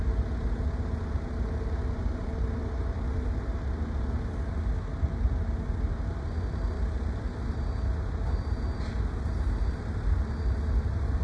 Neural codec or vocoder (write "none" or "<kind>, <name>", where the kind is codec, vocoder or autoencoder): none